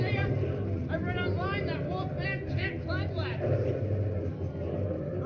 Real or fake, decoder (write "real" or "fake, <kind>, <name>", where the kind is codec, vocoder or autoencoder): real